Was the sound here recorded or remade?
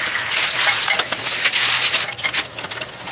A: recorded